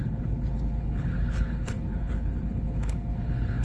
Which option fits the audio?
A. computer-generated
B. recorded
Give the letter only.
A